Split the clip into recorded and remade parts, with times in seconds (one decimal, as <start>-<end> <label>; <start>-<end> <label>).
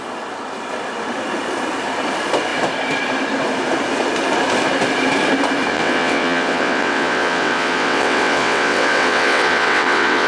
0.0-5.7 recorded; 5.7-10.3 remade